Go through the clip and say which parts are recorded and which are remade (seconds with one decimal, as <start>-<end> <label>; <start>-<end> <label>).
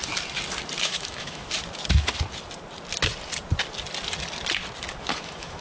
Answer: 0.0-0.8 recorded; 0.8-1.6 remade; 1.6-5.0 recorded; 5.0-5.6 remade